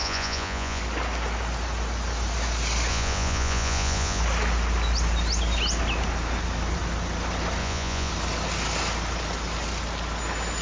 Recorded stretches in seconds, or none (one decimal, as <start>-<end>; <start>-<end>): 0.8-2.9; 4.2-7.6; 8.1-10.6